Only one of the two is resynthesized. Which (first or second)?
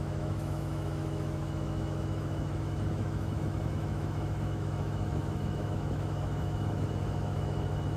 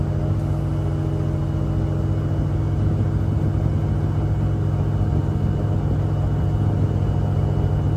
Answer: first